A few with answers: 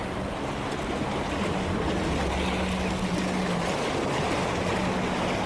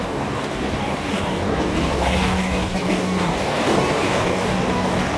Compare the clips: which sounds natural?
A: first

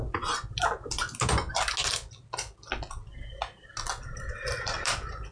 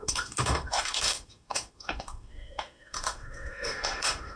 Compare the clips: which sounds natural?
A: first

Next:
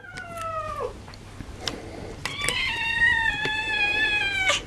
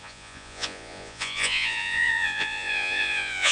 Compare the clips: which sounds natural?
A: first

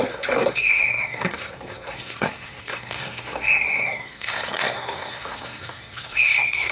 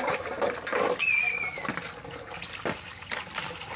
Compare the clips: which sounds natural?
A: second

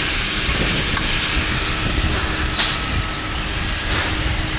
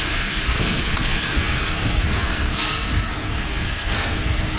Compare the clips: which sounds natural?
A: first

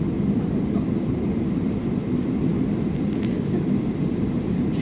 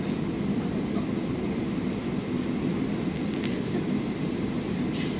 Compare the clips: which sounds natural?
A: second